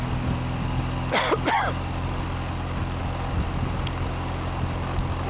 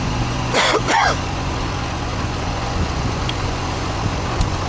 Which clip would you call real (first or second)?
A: first